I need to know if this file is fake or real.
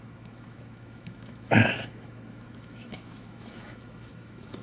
fake